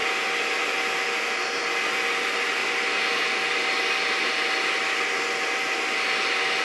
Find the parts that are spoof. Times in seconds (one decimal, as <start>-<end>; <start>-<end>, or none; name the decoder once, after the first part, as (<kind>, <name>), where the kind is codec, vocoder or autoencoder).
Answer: none

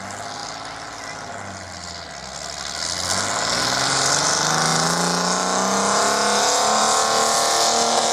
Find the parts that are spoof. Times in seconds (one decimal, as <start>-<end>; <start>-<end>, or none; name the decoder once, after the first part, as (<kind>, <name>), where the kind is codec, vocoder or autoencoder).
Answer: none